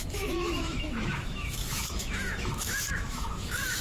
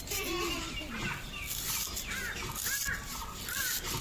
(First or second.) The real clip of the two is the second